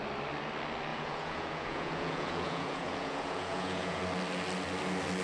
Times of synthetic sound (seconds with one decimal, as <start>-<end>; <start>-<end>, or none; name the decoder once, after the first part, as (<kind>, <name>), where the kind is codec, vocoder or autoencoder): 0.9-4.0 (vocoder, Vocos)